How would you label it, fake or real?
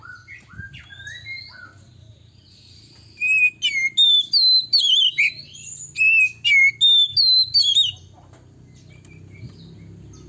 real